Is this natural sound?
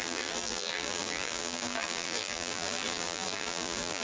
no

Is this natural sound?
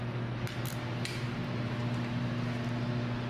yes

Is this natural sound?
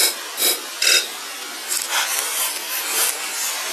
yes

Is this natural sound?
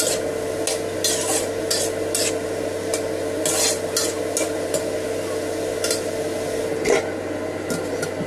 yes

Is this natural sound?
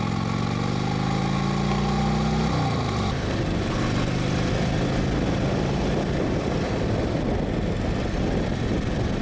yes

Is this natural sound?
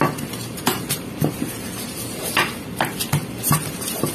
no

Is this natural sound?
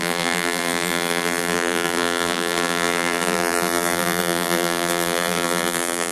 no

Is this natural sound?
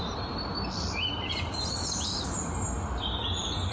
no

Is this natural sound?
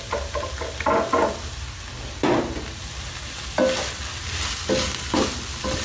yes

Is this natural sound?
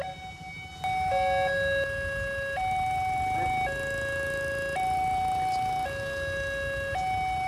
yes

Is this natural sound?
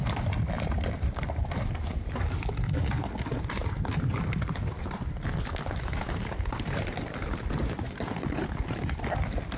yes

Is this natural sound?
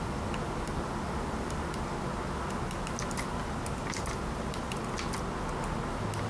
yes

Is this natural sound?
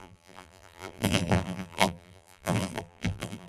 no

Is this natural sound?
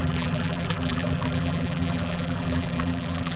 no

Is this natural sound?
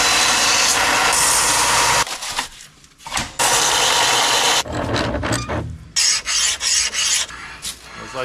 yes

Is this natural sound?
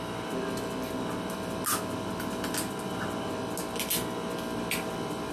yes